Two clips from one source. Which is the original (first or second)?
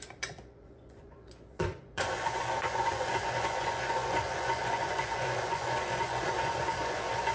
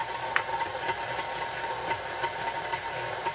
second